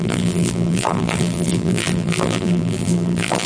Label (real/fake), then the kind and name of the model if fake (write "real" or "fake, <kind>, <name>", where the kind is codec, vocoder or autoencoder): fake, vocoder, BigVGAN v2